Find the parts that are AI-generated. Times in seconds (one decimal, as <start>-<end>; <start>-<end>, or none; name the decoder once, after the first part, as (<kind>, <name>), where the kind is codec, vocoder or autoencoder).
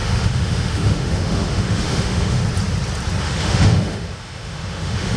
0.0-2.4 (autoencoder, DAC-VAE); 3.2-5.2